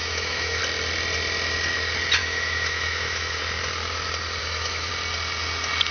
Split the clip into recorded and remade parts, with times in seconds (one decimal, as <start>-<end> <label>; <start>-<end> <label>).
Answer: 0.0-0.6 remade; 0.6-2.2 recorded; 2.2-3.4 remade; 3.4-4.4 recorded; 4.4-4.9 remade; 4.9-5.9 recorded